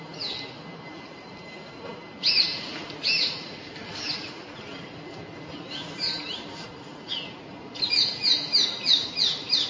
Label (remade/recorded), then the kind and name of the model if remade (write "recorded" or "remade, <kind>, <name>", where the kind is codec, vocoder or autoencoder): recorded